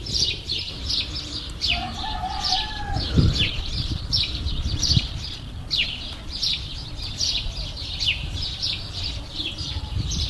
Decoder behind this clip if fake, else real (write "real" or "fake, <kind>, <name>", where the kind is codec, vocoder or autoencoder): fake, vocoder, BigVGAN v2